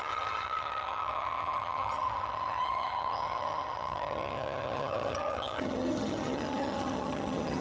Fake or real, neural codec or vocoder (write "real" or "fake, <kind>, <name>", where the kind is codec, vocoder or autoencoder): fake, vocoder, HiFi-GAN